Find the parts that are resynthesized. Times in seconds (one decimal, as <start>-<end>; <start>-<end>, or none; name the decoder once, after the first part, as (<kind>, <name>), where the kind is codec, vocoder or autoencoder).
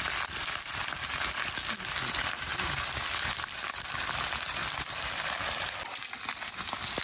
0.0-7.0 (vocoder, BigVGAN v2)